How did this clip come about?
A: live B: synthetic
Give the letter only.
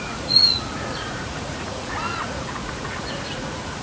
B